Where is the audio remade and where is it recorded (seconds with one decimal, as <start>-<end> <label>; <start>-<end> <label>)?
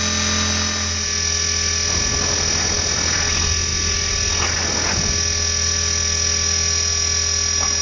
0.0-7.8 recorded